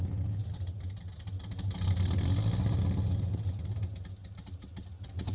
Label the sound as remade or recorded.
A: recorded